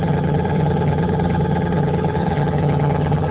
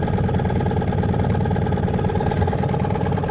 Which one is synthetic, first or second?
first